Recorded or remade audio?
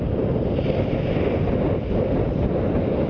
recorded